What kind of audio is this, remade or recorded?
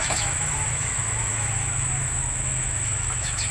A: remade